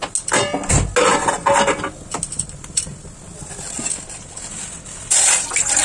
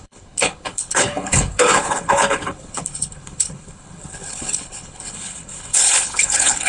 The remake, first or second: second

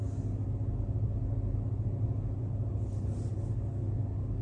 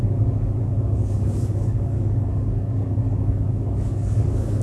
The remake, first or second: second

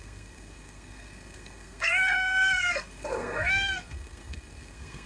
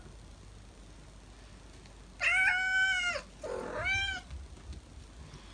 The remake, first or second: first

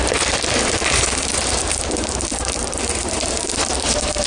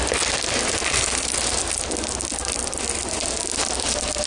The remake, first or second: first